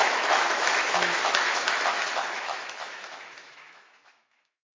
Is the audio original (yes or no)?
no